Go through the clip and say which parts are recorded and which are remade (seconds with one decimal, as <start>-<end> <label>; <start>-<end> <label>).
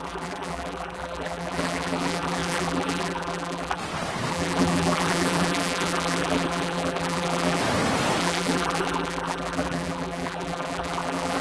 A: 0.0-3.8 remade; 3.8-4.3 recorded; 4.3-7.6 remade; 7.6-8.2 recorded; 8.2-11.4 remade